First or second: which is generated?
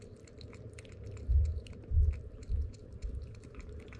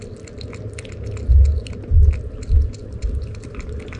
first